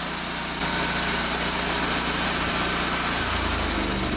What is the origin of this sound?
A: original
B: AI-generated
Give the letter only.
A